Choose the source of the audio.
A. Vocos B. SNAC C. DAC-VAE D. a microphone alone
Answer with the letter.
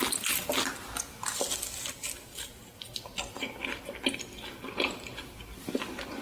D